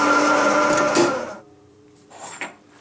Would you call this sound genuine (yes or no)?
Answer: no